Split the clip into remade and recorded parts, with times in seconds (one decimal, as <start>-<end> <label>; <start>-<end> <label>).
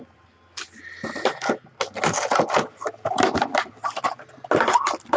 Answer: 0.0-5.2 recorded